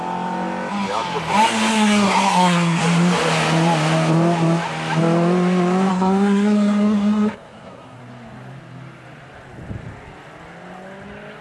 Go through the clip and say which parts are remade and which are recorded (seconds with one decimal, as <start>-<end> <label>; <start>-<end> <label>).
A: 0.0-1.7 recorded; 1.7-2.8 remade; 2.8-5.9 recorded; 5.9-8.0 remade; 8.0-11.4 recorded